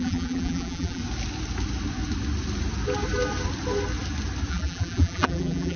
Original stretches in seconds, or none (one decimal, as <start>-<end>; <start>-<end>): 1.0-4.5